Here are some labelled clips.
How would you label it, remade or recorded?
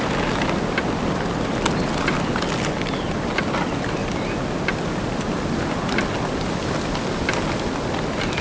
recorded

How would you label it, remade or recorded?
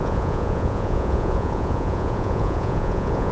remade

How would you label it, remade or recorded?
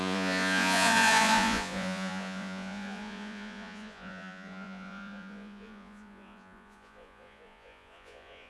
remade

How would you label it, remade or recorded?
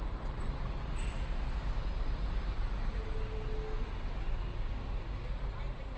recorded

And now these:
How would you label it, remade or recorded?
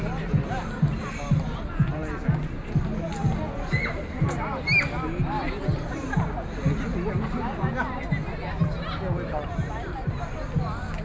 recorded